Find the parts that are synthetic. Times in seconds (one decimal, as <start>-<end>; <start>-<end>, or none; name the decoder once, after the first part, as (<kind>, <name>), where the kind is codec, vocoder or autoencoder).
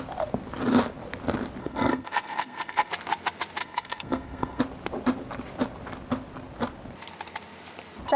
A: 1.6-2.9 (codec, SNAC); 3.6-4.6